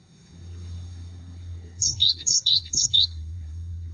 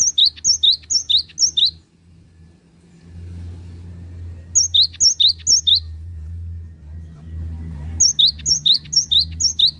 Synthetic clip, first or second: first